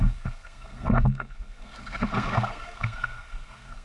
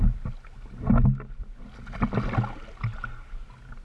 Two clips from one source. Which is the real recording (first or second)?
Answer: second